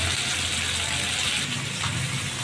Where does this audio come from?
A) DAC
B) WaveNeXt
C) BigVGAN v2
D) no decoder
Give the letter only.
D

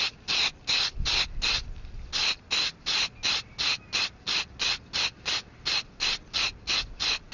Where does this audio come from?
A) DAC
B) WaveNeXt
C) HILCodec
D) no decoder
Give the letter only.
D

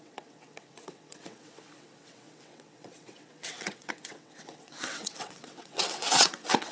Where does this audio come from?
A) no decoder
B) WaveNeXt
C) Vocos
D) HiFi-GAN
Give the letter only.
B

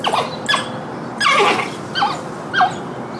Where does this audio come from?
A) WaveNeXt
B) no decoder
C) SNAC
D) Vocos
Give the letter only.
B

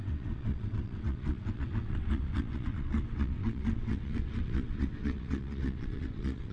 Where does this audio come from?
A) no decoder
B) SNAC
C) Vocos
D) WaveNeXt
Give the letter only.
D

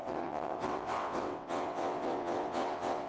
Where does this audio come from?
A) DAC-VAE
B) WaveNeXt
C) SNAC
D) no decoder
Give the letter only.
B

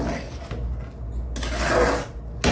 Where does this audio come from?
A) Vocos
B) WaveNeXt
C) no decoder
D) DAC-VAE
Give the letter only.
C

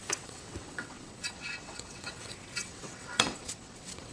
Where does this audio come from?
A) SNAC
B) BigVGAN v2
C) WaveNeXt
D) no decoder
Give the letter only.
C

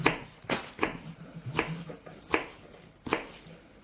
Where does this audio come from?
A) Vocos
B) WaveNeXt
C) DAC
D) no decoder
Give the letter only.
D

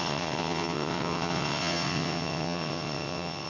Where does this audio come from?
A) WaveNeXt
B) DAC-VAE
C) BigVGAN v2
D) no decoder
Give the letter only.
A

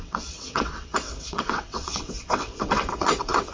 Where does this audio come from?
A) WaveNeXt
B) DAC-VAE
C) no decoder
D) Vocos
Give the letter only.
A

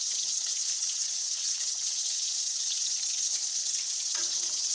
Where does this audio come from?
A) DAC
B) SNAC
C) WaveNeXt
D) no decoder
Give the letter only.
C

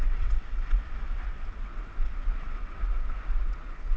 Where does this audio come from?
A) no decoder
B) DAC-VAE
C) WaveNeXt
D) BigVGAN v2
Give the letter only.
C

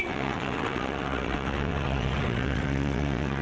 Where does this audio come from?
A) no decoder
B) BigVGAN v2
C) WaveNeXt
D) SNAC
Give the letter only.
C